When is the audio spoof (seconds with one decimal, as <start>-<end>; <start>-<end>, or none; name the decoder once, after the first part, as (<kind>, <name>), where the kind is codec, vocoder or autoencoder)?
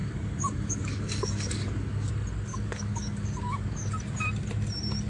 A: 0.0-2.1 (codec, DAC); 2.5-3.9